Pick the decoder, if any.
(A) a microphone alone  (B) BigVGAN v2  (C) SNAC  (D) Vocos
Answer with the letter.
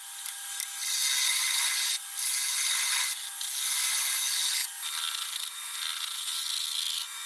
A